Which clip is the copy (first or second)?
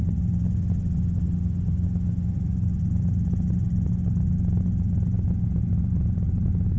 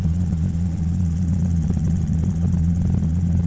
second